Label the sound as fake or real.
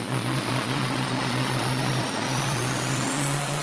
fake